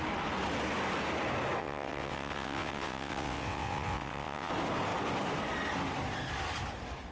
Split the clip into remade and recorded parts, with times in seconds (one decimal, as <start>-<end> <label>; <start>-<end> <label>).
0.0-1.6 recorded; 1.6-4.5 remade; 4.5-7.1 recorded